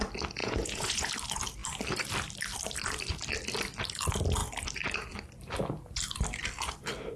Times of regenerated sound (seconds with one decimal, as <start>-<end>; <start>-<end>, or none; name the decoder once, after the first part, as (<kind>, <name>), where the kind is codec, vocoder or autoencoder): 0.4-1.1 (vocoder, Vocos)